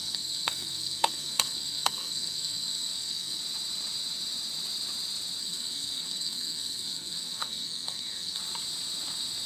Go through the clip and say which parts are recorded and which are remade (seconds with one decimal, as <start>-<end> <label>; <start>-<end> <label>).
0.0-3.4 remade; 3.4-5.4 recorded; 5.4-8.4 remade; 8.4-9.5 recorded